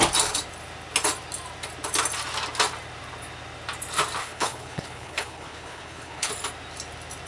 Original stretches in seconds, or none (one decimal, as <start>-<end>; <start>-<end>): 0.0-4.2; 6.3-7.3